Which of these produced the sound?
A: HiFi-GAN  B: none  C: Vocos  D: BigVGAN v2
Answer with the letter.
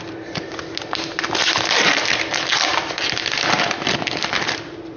B